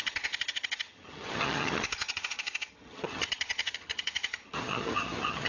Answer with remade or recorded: remade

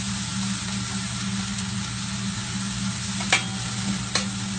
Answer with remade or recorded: recorded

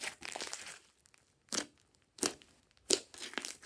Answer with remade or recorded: recorded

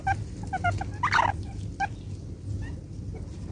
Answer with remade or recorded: recorded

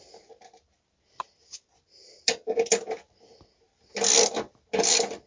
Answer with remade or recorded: recorded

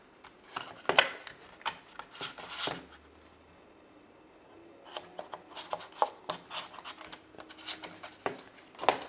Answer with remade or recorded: recorded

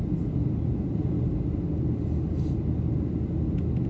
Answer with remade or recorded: recorded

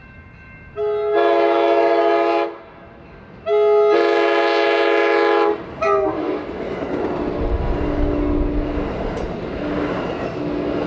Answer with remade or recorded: recorded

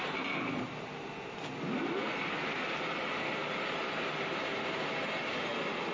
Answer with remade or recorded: recorded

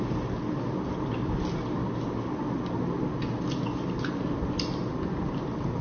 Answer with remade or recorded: recorded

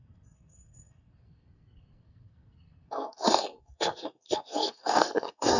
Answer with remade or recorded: remade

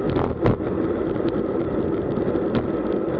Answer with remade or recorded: recorded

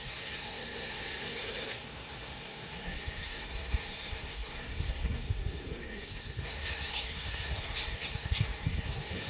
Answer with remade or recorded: remade